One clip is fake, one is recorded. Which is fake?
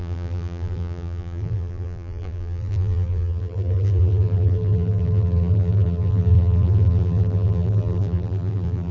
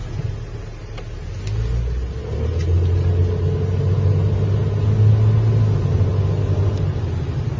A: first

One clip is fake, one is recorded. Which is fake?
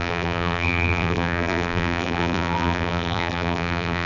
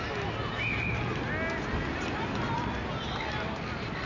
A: first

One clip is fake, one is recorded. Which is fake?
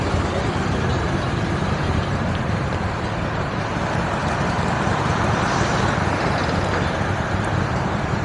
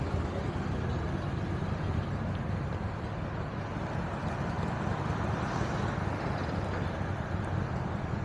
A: first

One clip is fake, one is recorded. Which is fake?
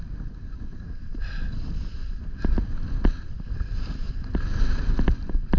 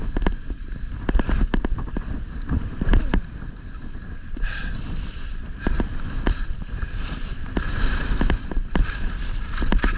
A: second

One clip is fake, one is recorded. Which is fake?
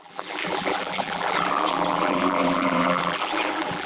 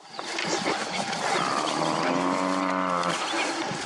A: first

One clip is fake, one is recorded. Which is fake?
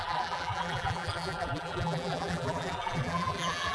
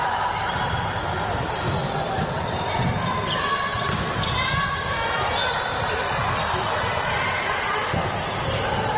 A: first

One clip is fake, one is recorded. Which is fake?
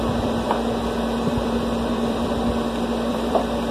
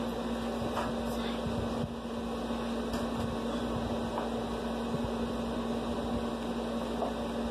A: first